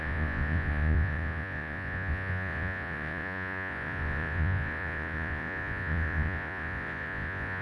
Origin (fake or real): fake